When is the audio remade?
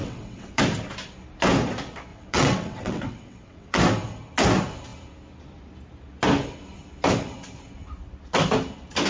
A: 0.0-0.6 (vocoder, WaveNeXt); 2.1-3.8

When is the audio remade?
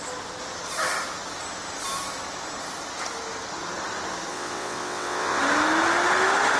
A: 4.3-5.4 (vocoder, WaveNeXt)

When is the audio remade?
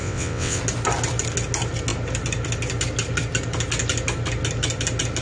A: 0.0-0.6 (vocoder, WaveNeXt)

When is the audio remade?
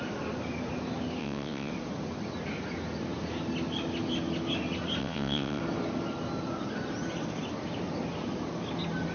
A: 1.2-1.7 (vocoder, WaveNeXt); 5.0-5.6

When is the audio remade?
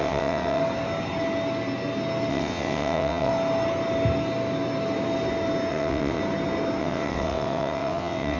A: 0.0-0.6 (vocoder, WaveNeXt); 2.3-3.3; 5.7-6.2; 6.8-8.4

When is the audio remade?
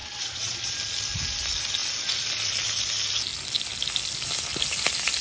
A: 0.0-0.7 (vocoder, WaveNeXt)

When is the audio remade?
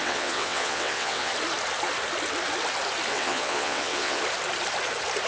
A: 0.0-1.3 (vocoder, WaveNeXt); 3.1-4.2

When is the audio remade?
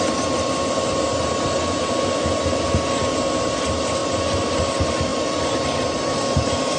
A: none